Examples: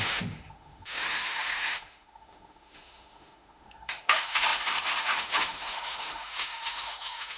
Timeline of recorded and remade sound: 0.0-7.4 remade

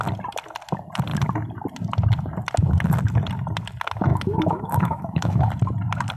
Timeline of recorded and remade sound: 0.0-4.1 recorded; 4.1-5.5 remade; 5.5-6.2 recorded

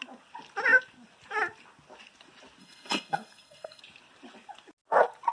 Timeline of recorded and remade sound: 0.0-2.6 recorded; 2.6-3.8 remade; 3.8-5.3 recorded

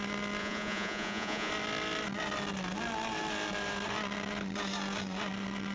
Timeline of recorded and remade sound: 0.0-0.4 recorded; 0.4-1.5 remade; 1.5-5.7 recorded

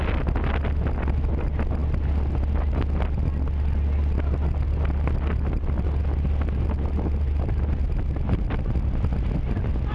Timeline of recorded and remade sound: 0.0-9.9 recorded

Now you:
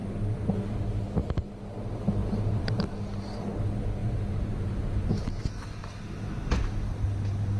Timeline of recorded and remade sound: 0.0-1.0 remade; 1.0-2.2 recorded; 2.2-3.6 remade; 3.6-4.0 recorded; 4.0-5.4 remade; 5.4-7.6 recorded

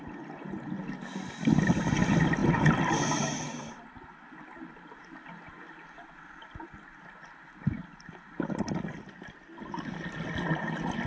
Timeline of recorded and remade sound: 0.0-11.1 recorded